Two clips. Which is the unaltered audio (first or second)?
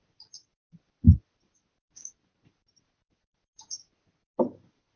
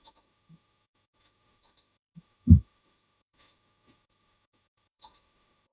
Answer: first